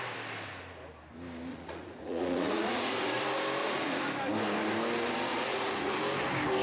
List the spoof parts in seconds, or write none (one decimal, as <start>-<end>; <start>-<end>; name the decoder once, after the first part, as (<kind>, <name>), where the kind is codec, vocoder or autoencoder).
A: 1.5-3.2 (vocoder, Vocos); 3.6-4.1; 5.3-6.0